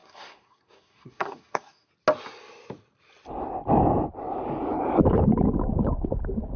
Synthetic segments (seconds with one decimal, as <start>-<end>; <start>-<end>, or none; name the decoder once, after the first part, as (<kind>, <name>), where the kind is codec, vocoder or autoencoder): 0.0-1.9 (codec, SNAC)